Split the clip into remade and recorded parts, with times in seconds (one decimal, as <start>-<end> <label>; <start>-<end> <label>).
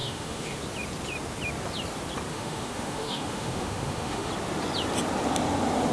0.0-0.6 remade; 0.6-2.3 recorded; 2.3-4.3 remade; 4.3-5.9 recorded